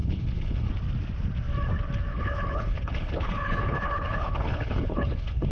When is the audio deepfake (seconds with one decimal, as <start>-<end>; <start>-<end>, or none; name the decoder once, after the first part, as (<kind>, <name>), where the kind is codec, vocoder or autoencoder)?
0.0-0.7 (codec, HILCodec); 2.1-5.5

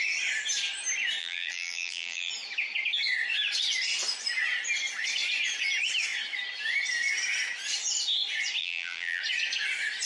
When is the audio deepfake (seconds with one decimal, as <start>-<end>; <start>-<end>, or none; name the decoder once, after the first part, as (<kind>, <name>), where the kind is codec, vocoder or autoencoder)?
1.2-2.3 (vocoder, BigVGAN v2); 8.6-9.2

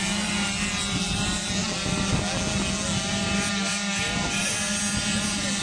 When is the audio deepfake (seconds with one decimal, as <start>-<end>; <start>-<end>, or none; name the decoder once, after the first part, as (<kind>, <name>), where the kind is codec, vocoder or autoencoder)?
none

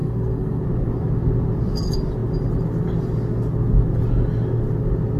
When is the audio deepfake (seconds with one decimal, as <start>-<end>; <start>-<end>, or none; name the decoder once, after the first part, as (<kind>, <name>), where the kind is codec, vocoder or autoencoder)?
0.0-0.6 (codec, SNAC)

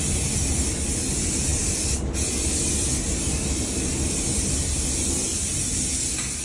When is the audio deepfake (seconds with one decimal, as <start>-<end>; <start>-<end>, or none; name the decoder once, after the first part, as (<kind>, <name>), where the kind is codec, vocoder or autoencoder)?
none

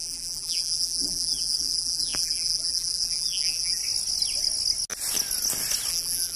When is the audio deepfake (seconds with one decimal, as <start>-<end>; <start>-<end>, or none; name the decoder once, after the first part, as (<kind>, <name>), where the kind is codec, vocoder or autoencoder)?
0.0-3.8 (vocoder, BigVGAN v2); 5.9-6.4